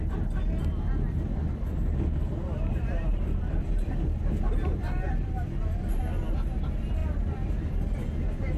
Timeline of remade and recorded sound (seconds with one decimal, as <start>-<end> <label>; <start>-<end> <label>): 0.0-3.1 recorded; 3.1-6.0 remade; 6.0-7.0 recorded; 7.0-7.5 remade; 7.5-8.6 recorded